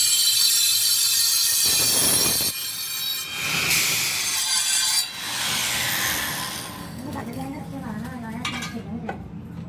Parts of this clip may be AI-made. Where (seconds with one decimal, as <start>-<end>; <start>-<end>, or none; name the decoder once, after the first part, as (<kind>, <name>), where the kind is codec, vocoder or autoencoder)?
6.8-7.6 (codec, SNAC)